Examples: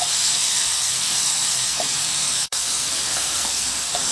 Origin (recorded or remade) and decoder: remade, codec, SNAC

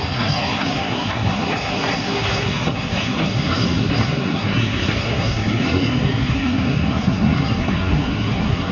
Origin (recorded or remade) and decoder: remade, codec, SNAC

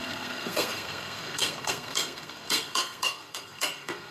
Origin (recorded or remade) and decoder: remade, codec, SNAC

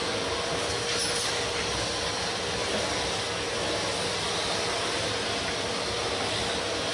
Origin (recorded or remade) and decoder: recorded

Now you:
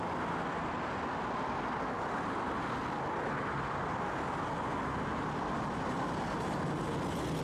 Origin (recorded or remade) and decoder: recorded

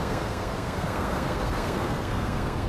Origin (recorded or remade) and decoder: remade, codec, SNAC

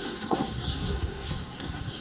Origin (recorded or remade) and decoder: remade, codec, SNAC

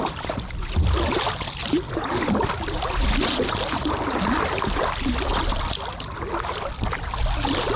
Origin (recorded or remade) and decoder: recorded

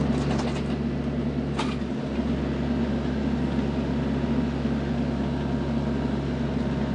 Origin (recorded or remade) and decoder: recorded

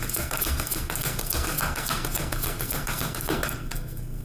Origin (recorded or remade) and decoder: remade, codec, SNAC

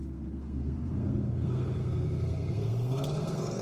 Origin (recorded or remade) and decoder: remade, codec, SNAC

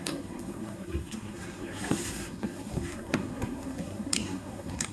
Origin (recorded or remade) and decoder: remade, codec, SNAC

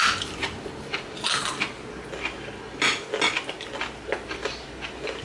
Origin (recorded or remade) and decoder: recorded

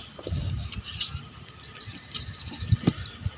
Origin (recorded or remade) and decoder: recorded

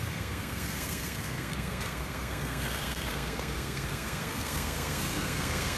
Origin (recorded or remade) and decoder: remade, codec, SNAC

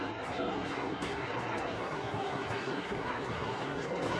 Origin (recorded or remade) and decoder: remade, codec, SNAC